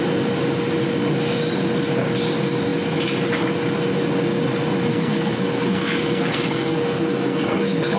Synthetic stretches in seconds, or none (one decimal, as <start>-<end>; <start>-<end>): 4.9-8.0